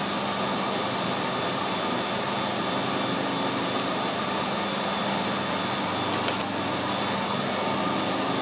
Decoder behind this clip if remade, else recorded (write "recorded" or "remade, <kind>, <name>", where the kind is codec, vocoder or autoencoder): recorded